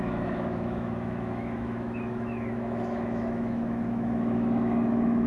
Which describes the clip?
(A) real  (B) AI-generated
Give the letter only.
B